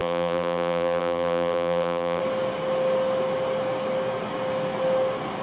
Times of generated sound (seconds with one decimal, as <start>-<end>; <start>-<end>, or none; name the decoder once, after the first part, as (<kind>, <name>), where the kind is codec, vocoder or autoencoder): 0.0-2.2 (vocoder, BigVGAN v2)